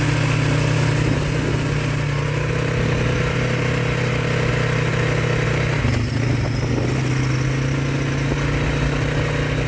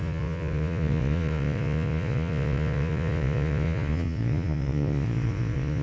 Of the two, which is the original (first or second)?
first